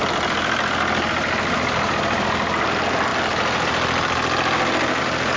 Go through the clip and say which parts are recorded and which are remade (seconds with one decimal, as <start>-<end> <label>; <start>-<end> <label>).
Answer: 0.0-5.4 recorded